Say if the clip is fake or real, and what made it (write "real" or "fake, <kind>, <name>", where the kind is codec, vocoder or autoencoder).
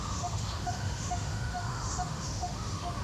fake, autoencoder, DAC-VAE